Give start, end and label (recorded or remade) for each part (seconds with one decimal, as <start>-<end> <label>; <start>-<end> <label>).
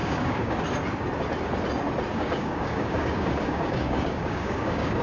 0.0-0.6 remade; 0.6-2.1 recorded; 2.1-5.0 remade